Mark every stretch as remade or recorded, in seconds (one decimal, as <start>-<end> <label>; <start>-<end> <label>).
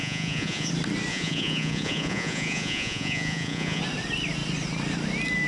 0.0-0.7 remade; 0.7-1.1 recorded; 1.1-3.8 remade; 3.8-5.5 recorded